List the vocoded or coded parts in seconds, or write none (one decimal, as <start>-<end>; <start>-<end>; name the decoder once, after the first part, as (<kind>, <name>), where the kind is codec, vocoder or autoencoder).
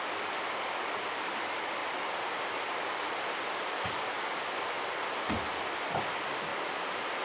none